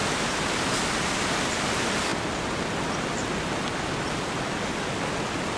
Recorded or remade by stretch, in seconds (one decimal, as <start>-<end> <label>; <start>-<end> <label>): 0.0-5.6 recorded